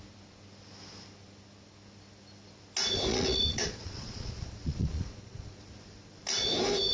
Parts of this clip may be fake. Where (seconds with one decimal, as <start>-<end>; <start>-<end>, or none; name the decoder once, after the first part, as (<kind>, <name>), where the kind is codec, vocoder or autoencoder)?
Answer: 3.1-5.6 (vocoder, Vocos)